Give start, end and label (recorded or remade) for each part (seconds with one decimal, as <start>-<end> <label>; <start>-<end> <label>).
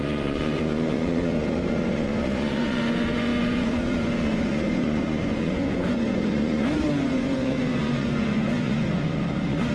0.0-9.7 remade